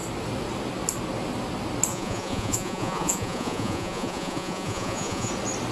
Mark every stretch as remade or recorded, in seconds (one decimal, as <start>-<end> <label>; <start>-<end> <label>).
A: 0.0-1.9 recorded; 1.9-5.3 remade; 5.3-5.7 recorded